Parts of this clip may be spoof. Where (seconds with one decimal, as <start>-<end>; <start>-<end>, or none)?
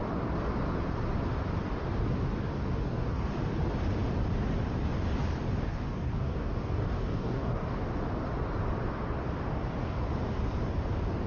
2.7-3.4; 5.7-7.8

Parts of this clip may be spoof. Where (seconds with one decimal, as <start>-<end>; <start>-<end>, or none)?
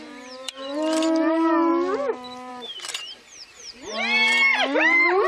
0.0-1.7; 2.5-5.3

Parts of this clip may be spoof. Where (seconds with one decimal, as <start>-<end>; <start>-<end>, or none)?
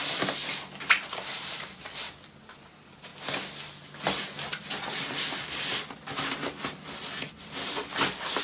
1.3-2.1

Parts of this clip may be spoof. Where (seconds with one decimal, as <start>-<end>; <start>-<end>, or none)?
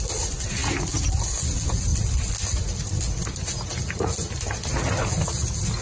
none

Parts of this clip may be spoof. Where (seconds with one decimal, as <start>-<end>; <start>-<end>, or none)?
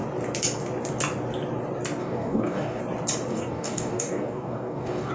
2.0-2.8; 3.3-5.1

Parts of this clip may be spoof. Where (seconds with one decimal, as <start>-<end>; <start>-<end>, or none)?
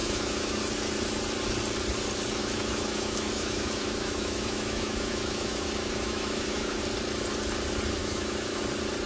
0.0-0.6; 2.4-6.8; 8.0-8.6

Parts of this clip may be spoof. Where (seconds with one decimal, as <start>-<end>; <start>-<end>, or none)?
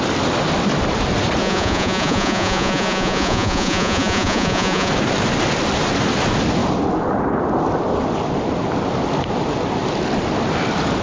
1.4-4.9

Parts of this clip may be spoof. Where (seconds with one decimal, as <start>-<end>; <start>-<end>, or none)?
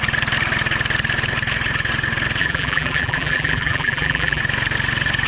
2.4-4.4